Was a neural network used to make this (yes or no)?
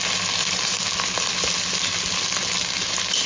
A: no